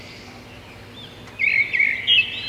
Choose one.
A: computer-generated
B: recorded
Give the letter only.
B